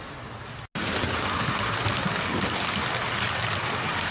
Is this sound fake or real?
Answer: real